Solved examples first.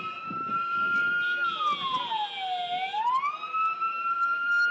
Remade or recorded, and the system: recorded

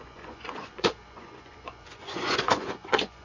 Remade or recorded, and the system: remade, vocoder, Vocos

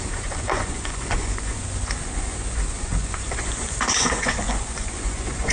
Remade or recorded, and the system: remade, vocoder, Vocos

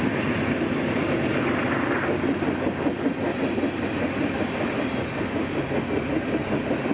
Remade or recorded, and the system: recorded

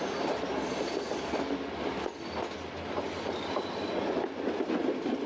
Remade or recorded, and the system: recorded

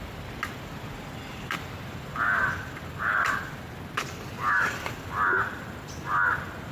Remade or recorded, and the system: recorded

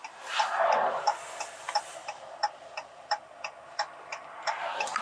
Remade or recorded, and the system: remade, vocoder, BigVGAN v2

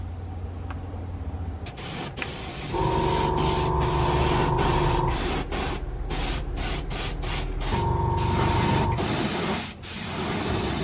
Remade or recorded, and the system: recorded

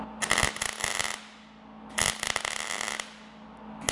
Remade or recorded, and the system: recorded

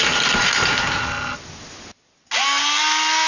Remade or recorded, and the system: recorded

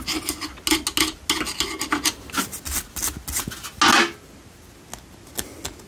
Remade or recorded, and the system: recorded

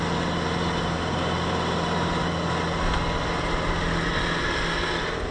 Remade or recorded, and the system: recorded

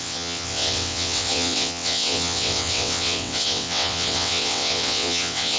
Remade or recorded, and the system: remade, vocoder, WaveNeXt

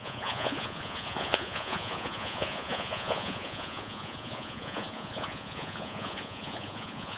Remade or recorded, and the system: remade, vocoder, Vocos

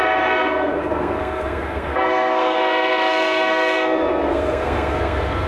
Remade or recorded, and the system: remade, codec, SNAC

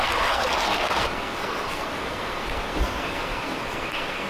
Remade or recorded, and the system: remade, codec, SNAC